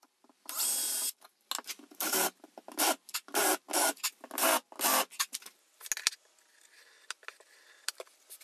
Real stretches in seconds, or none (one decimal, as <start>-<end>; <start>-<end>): 0.0-8.4